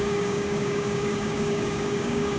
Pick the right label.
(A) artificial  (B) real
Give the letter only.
A